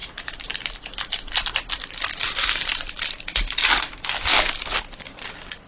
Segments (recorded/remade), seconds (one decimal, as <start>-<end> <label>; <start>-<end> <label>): 0.0-3.6 remade; 3.6-4.8 recorded; 4.8-5.7 remade

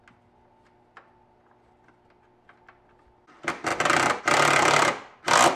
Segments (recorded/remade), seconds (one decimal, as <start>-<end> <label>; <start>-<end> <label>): 0.0-5.6 recorded

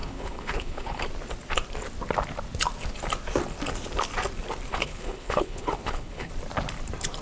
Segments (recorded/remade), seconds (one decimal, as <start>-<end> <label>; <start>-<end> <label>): 0.0-1.0 remade; 1.0-4.7 recorded; 4.7-6.3 remade; 6.3-7.2 recorded

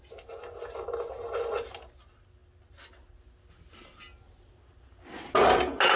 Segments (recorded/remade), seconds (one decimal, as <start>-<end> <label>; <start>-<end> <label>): 0.0-6.0 recorded